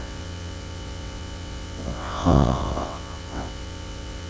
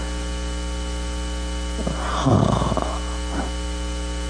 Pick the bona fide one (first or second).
second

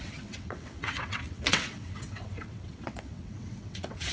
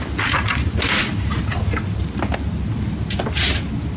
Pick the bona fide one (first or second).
second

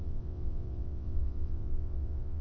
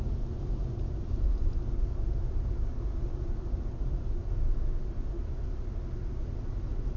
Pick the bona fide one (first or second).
second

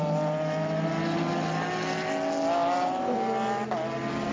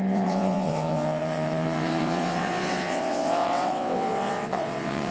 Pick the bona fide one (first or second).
first